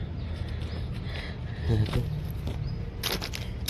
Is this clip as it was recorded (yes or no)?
yes